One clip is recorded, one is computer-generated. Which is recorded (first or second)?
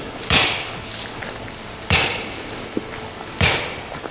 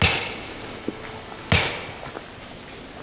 second